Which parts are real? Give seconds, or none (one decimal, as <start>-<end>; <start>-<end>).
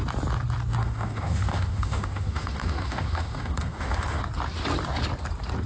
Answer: 0.0-0.8; 4.2-5.7